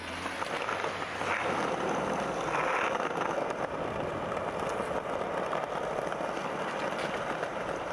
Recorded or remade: recorded